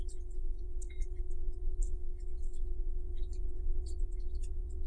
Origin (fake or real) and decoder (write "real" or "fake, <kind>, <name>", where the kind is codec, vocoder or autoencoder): fake, vocoder, WaveNeXt